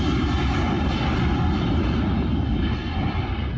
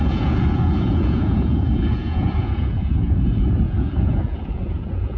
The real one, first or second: first